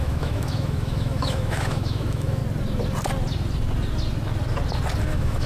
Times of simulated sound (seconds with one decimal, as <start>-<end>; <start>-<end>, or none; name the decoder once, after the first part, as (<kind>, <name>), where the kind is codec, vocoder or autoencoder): 0.0-2.4 (autoencoder, DAC-VAE); 5.0-5.5